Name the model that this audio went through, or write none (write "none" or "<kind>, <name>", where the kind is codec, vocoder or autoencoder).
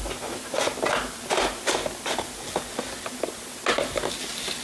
none